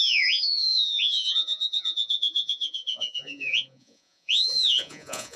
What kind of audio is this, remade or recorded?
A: remade